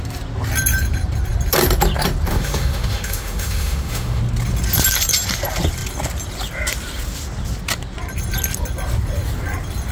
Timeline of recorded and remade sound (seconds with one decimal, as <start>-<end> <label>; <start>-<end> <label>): 0.0-2.3 recorded; 2.3-4.2 remade; 4.2-9.9 recorded